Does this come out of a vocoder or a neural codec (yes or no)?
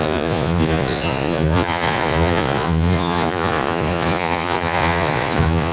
yes